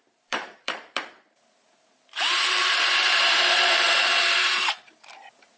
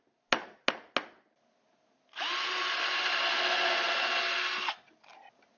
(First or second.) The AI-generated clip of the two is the first